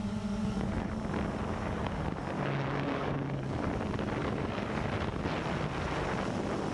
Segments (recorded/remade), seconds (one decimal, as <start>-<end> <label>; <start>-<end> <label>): 0.0-0.9 remade; 0.9-1.5 recorded; 1.5-3.7 remade; 3.7-4.2 recorded; 4.2-4.9 remade; 4.9-6.7 recorded